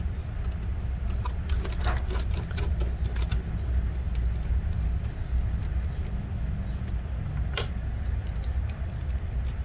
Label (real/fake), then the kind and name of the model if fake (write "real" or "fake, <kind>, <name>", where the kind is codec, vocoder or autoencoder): real